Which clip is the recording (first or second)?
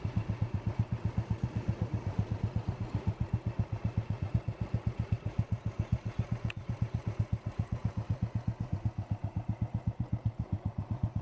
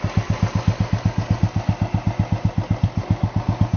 second